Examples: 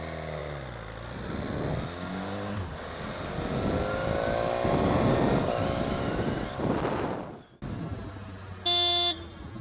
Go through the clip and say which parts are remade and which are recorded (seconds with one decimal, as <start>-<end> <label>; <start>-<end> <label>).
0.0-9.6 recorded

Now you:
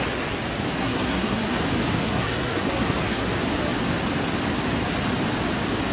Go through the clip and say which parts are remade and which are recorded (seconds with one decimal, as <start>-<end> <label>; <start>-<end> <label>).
0.0-0.8 recorded; 0.8-1.6 remade; 1.6-2.0 recorded; 2.0-3.3 remade; 3.3-5.9 recorded

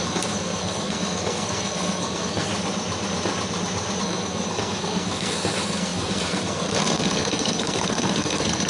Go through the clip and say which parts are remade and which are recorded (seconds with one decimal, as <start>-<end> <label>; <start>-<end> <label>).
0.0-2.5 remade; 2.5-4.0 recorded; 4.0-8.7 remade

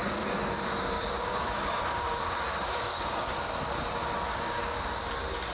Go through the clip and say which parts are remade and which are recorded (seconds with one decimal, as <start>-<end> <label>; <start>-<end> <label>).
0.0-3.3 remade; 3.3-4.3 recorded; 4.3-4.8 remade; 4.8-5.5 recorded

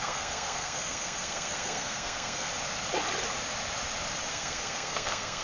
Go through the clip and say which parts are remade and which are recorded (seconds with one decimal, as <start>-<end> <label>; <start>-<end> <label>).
0.0-2.5 remade; 2.5-4.3 recorded; 4.3-5.4 remade

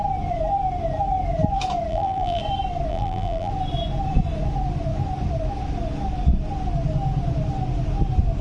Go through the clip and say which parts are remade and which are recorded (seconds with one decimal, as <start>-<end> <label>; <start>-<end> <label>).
0.0-1.9 recorded; 1.9-2.4 remade; 2.4-2.9 recorded; 2.9-3.5 remade; 3.5-8.4 recorded